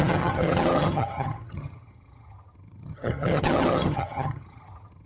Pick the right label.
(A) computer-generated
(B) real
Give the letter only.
A